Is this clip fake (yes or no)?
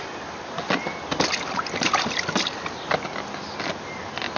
no